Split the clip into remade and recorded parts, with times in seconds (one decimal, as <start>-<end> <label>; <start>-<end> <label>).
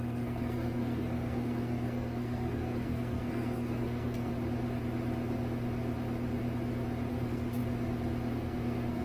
0.0-4.3 remade; 4.3-7.1 recorded; 7.1-7.6 remade; 7.6-8.3 recorded; 8.3-9.0 remade